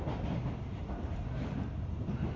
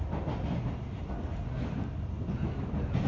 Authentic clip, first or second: second